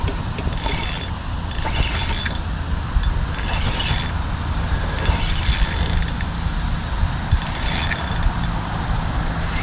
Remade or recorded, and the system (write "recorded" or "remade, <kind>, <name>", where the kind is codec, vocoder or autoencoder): recorded